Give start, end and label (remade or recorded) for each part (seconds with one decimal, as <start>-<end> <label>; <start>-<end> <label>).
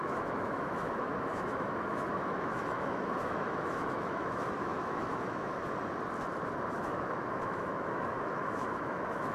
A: 0.0-5.6 remade; 5.6-6.7 recorded; 6.7-9.3 remade